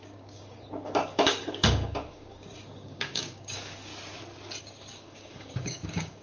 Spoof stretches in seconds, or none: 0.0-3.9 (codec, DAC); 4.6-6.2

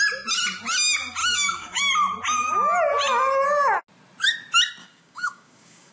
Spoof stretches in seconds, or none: 1.2-1.8 (codec, DAC); 4.8-5.9

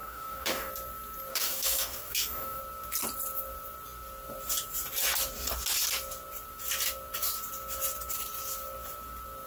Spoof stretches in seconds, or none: 0.0-0.7 (codec, DAC); 1.3-2.6